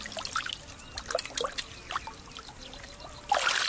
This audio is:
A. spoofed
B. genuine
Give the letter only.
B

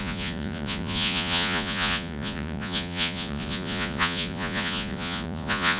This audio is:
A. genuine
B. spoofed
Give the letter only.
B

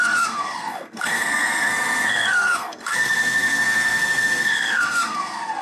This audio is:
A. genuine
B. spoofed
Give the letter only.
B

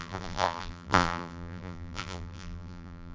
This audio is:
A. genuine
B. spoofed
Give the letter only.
B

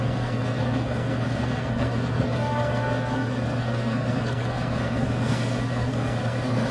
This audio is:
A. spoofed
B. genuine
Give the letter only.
A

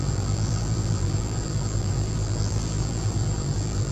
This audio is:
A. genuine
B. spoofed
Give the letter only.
B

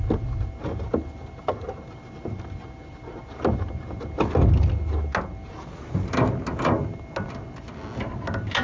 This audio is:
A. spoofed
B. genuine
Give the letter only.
B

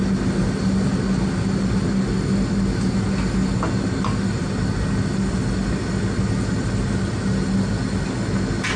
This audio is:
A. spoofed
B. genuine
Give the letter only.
B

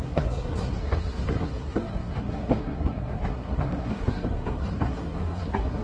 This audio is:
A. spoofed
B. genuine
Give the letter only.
A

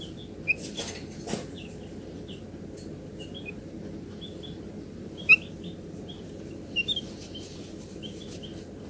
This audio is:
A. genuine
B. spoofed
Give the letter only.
A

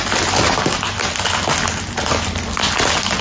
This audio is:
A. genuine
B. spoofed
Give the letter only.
A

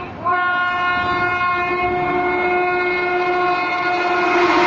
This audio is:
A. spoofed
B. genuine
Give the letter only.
B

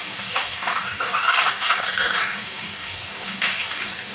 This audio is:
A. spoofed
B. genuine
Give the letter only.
A